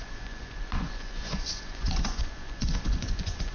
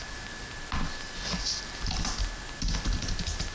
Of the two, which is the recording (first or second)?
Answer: second